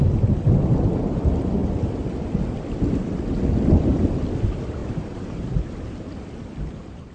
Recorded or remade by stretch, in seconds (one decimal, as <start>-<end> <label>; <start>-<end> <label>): 0.0-4.8 recorded; 4.8-5.7 remade; 5.7-7.1 recorded